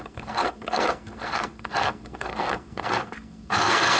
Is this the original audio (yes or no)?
no